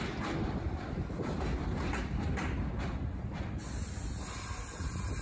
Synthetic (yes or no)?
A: no